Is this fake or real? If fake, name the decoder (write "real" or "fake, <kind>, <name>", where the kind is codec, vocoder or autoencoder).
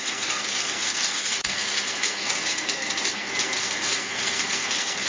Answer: fake, codec, SNAC